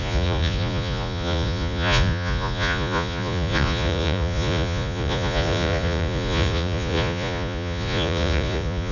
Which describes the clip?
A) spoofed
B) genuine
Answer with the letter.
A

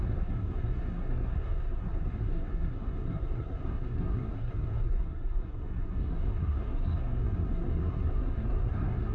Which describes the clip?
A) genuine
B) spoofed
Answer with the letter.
B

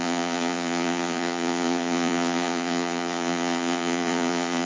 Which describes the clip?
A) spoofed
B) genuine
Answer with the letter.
A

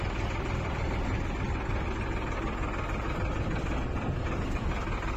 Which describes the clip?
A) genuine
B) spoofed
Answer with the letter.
A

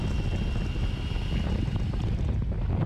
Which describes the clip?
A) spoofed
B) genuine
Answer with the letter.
B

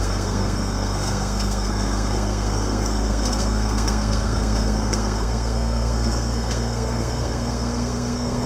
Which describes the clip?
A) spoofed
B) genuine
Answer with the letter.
A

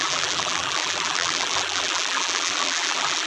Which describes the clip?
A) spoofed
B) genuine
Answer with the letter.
A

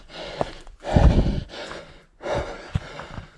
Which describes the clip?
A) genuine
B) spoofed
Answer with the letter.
B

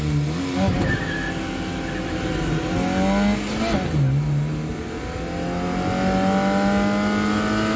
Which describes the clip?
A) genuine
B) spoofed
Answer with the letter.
A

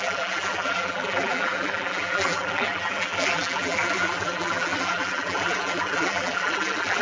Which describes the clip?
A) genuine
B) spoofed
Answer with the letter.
B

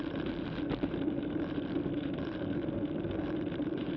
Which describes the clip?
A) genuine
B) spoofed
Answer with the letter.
B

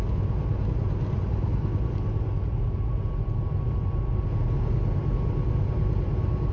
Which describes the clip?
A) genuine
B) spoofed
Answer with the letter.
A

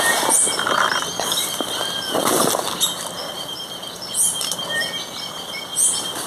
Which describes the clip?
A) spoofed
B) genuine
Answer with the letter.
B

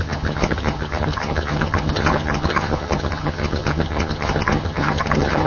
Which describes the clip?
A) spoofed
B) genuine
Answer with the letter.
A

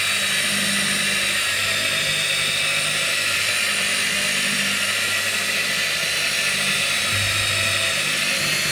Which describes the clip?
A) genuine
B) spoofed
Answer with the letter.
A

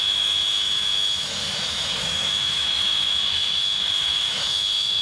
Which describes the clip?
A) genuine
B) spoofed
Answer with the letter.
B